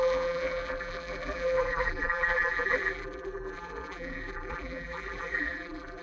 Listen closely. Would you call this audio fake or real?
fake